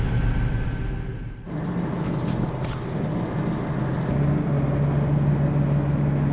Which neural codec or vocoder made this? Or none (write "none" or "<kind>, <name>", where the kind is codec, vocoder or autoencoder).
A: none